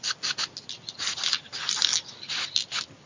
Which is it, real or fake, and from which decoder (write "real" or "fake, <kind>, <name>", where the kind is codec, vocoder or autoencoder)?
real